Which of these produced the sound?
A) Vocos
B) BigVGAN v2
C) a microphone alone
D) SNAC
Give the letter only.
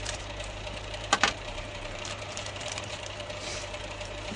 B